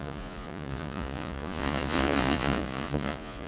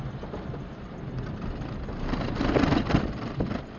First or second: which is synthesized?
first